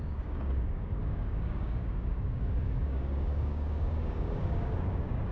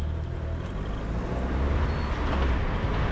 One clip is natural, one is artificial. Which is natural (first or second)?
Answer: second